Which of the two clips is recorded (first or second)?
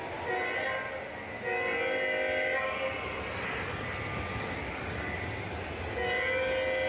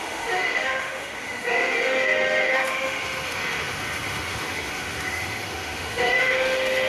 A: first